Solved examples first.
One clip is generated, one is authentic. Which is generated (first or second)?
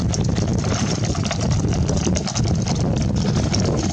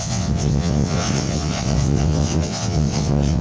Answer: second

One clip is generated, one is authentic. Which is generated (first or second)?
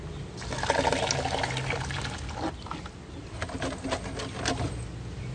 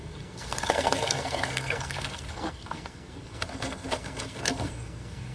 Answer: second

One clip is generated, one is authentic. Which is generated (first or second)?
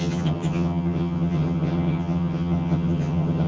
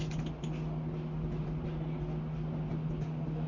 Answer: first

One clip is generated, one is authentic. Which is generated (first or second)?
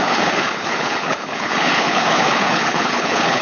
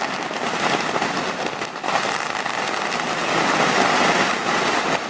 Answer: first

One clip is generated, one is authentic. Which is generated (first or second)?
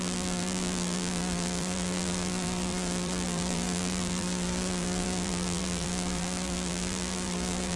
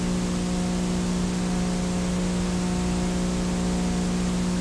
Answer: first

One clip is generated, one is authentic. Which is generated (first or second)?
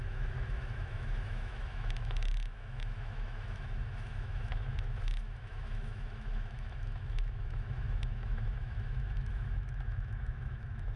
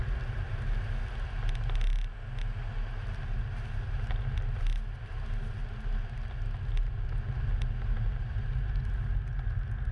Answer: first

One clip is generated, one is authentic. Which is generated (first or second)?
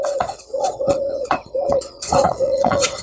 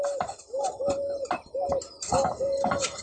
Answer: first